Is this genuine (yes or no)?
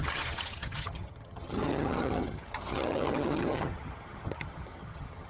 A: no